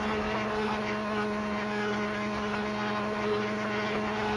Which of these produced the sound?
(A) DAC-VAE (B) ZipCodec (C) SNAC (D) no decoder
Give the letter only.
C